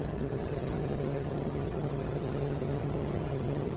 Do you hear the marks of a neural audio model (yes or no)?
yes